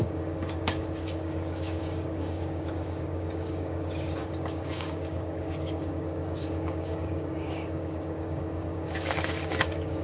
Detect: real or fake fake